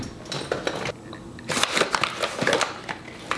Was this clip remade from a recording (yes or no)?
no